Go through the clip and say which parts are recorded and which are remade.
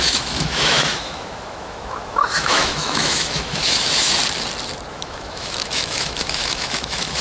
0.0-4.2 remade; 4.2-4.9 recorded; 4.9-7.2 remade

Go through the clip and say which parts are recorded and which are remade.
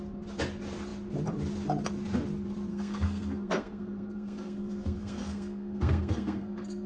0.0-2.7 recorded; 2.7-6.9 remade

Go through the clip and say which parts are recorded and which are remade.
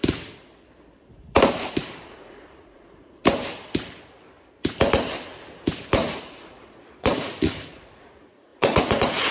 0.0-2.1 recorded; 2.1-3.2 remade; 3.2-5.9 recorded; 5.9-9.3 remade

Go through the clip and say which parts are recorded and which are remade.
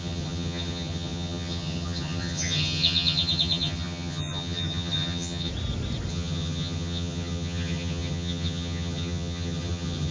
0.0-5.5 remade; 5.5-6.1 recorded; 6.1-10.1 remade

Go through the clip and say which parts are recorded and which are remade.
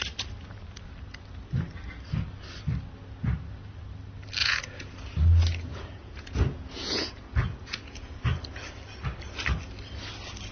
0.0-4.4 recorded; 4.4-4.9 remade; 4.9-5.7 recorded; 5.7-8.2 remade; 8.2-10.5 recorded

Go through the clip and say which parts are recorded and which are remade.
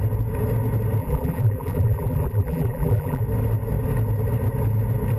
0.0-1.0 recorded; 1.0-3.2 remade; 3.2-5.2 recorded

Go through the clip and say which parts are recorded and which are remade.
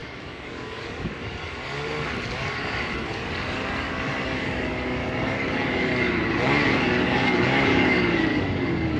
0.0-9.0 remade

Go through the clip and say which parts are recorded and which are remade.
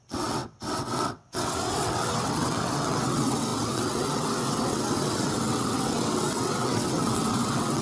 0.0-7.8 remade